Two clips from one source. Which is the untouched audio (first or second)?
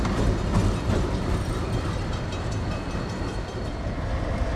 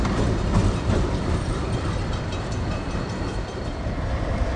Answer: first